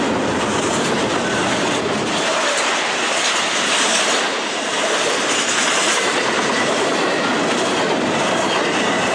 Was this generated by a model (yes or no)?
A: no